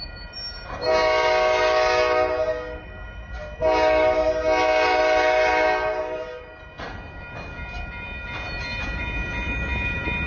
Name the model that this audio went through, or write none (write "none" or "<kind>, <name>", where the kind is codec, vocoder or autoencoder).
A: none